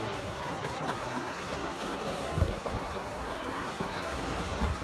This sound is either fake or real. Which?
fake